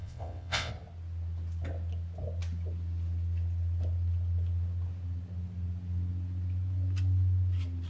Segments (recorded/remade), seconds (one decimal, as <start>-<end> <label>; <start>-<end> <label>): 0.0-0.7 remade; 0.7-7.9 recorded